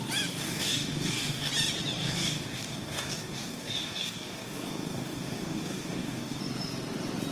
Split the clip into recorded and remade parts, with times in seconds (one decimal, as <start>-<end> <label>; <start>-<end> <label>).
0.0-0.4 recorded; 0.4-1.5 remade; 1.5-2.0 recorded; 2.0-6.4 remade; 6.4-7.3 recorded